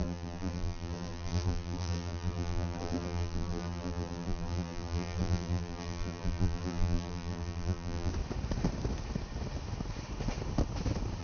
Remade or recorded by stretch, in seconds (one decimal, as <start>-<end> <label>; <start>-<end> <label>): 0.0-8.1 remade; 8.1-11.2 recorded